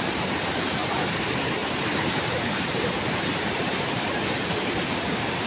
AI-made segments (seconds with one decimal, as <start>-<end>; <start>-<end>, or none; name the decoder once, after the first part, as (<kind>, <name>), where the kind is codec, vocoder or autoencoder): 0.0-5.5 (vocoder, BigVGAN v2)